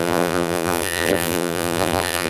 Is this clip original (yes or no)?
no